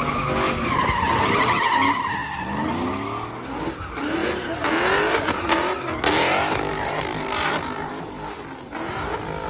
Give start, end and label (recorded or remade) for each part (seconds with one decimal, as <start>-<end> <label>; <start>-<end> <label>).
0.0-6.7 recorded; 6.7-7.9 remade; 7.9-9.5 recorded